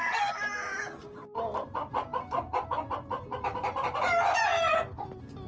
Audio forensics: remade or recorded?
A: recorded